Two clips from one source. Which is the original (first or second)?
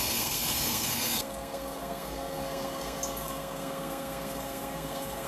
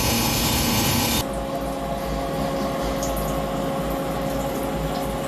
second